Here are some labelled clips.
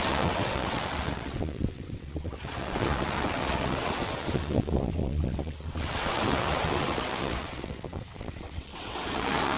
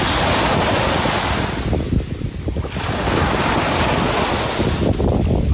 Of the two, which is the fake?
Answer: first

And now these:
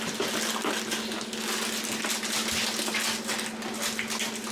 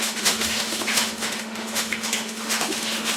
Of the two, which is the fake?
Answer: second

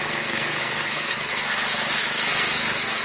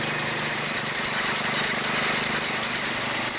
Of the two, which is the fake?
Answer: first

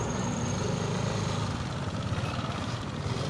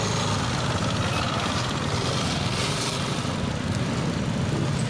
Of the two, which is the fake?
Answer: first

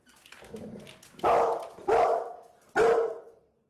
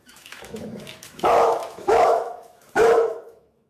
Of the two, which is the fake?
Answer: second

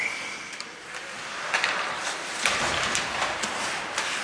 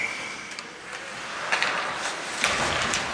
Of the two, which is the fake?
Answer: first